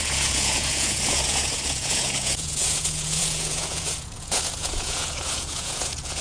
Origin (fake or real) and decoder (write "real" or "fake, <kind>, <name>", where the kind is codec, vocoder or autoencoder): fake, vocoder, Vocos